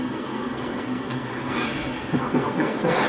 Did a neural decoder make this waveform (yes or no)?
yes